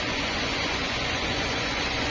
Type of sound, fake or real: fake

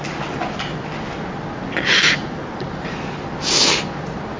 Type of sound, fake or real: real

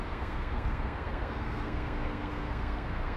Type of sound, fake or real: fake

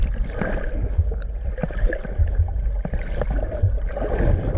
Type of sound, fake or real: real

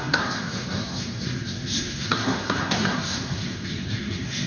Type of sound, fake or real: fake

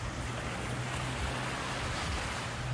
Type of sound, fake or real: real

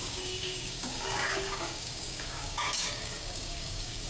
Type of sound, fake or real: fake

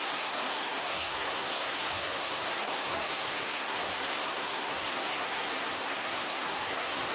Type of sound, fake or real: fake